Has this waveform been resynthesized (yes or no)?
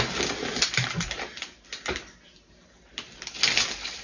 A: no